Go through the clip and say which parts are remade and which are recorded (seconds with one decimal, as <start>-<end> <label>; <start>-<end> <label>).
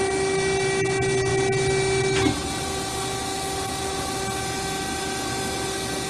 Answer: 0.0-6.1 recorded